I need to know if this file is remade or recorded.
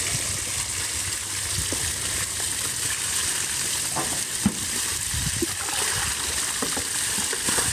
recorded